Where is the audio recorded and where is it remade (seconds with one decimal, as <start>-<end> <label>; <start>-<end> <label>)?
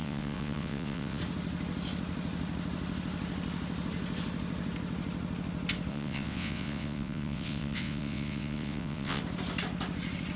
0.0-1.2 remade; 1.2-5.9 recorded; 5.9-9.2 remade; 9.2-10.4 recorded